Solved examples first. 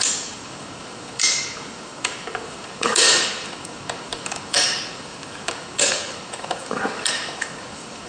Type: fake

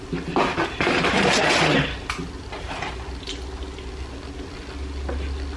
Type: real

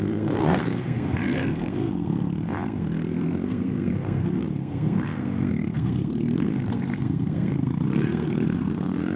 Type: fake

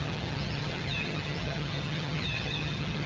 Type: fake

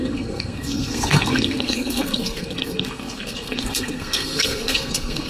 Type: fake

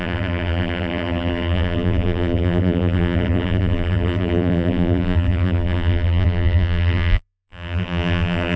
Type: fake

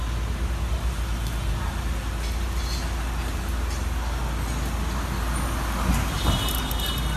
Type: real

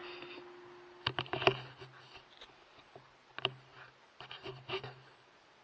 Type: real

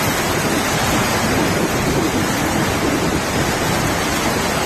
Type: real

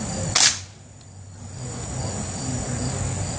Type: real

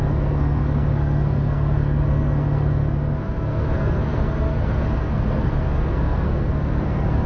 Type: fake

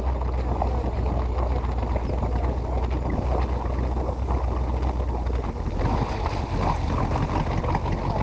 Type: real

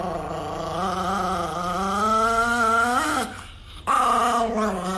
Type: real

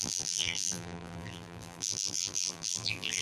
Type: fake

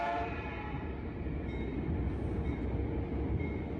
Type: fake